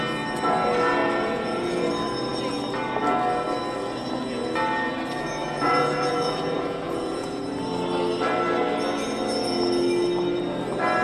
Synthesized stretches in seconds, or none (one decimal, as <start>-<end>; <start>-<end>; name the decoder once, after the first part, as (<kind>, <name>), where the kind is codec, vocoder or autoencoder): 1.0-1.9 (vocoder, Vocos); 5.4-7.4